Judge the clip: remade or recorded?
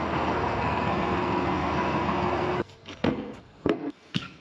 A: remade